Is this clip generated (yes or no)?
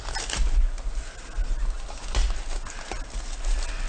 no